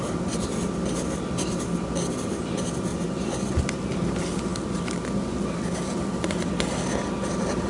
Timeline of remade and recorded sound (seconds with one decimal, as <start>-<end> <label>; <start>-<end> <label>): 0.0-7.7 recorded